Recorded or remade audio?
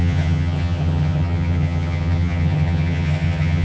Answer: remade